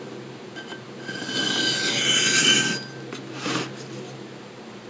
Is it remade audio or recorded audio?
recorded